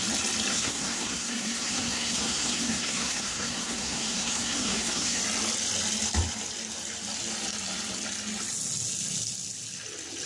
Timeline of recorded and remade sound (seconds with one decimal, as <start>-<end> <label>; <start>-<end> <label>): 0.0-0.5 recorded; 0.5-5.2 remade; 5.2-10.3 recorded